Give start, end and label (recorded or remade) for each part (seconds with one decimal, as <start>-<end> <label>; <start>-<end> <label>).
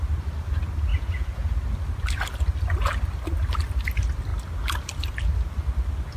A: 0.0-0.9 recorded; 0.9-1.5 remade; 1.5-6.2 recorded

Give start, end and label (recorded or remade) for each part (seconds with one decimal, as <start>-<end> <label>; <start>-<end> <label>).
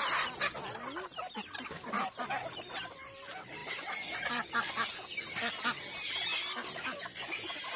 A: 0.0-7.8 recorded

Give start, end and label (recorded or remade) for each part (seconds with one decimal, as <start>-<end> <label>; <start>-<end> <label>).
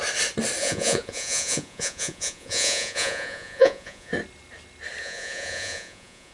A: 0.0-0.6 recorded; 0.6-4.1 remade; 4.1-5.0 recorded; 5.0-6.3 remade